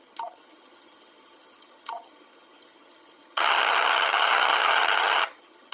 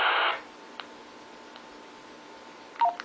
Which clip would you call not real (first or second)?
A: first